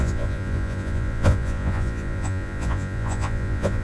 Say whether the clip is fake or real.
fake